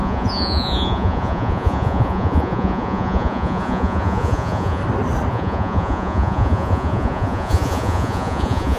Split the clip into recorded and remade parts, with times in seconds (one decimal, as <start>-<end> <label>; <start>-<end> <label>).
0.0-4.8 remade; 4.8-5.3 recorded; 5.3-8.8 remade